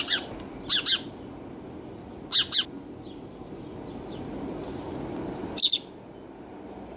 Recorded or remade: recorded